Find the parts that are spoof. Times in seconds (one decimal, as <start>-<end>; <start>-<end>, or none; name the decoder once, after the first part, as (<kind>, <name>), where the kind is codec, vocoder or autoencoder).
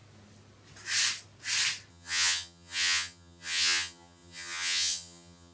1.9-5.5 (vocoder, HiFi-GAN)